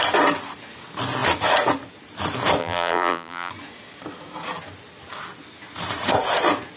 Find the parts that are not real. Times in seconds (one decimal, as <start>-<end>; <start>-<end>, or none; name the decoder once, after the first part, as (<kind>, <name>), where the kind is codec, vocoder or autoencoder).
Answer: 2.6-3.5 (vocoder, BigVGAN v2)